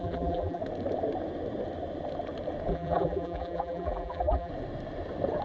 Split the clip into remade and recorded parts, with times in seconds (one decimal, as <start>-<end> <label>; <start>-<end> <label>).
0.0-0.6 remade; 0.6-2.7 recorded; 2.7-4.5 remade; 4.5-5.4 recorded